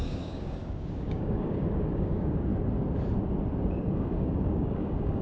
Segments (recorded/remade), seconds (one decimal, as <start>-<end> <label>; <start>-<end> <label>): 0.0-2.5 remade; 2.5-3.7 recorded; 3.7-5.2 remade